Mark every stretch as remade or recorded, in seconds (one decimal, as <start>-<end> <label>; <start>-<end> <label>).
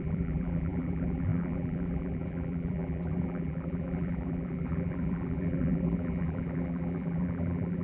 0.0-7.8 remade